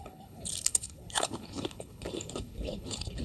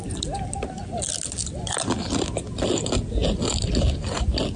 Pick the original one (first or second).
second